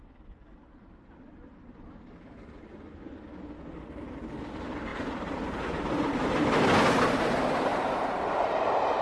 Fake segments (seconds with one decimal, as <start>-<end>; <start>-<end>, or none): 4.9-5.9; 7.7-9.0